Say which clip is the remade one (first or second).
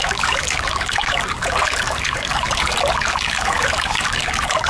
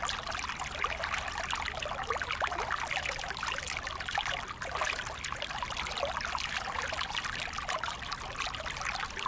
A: first